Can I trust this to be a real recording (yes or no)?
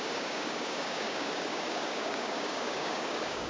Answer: no